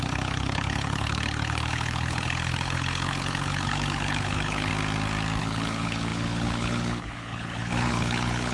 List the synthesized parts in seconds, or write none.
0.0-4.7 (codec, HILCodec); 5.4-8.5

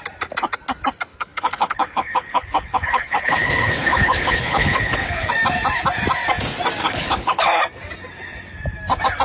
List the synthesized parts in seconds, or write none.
1.1-5.3 (codec, HILCodec); 6.8-7.6

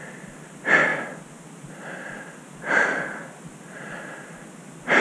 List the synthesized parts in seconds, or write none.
none

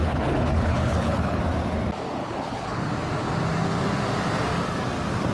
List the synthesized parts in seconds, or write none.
0.0-1.4 (codec, HILCodec); 2.2-2.8